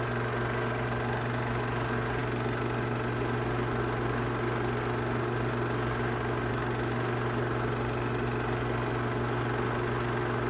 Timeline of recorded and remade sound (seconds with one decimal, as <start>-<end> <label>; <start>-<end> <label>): 0.0-10.5 recorded